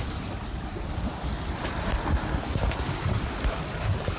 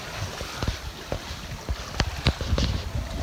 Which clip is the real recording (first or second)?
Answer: second